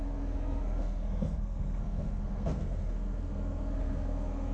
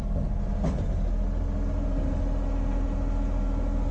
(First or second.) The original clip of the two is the second